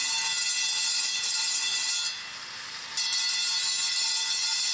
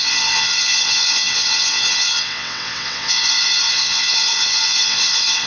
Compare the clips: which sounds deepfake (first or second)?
second